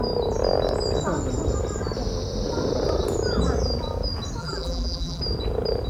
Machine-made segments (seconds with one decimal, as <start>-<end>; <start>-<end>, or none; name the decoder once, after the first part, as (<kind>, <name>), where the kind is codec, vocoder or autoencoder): 4.4-5.2 (vocoder, BigVGAN v2)